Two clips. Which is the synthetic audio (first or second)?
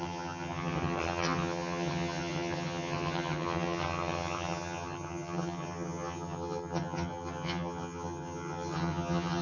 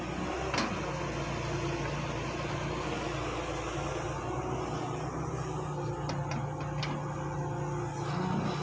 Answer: first